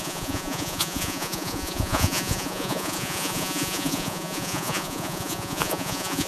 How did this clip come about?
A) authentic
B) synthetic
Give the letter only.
B